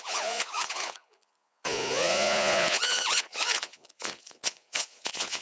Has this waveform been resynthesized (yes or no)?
yes